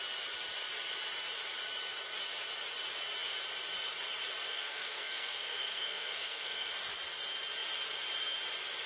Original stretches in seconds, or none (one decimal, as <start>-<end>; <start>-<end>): 0.0-4.5; 6.7-8.9